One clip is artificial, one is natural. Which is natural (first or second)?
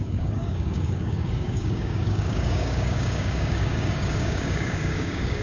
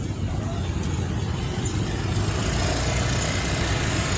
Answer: second